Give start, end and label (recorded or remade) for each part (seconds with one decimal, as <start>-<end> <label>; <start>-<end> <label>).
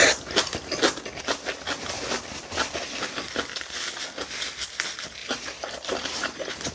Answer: 0.0-5.2 recorded; 5.2-6.7 remade